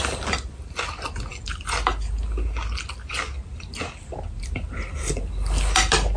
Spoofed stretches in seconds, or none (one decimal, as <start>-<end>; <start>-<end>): none